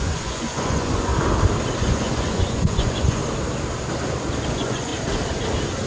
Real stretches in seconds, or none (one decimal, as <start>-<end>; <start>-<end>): 1.1-1.8; 3.2-4.5; 4.9-5.9